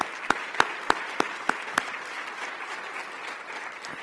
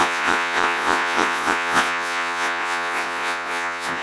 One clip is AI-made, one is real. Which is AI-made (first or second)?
second